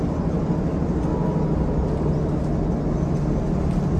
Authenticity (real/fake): real